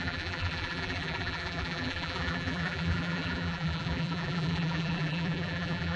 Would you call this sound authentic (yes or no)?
no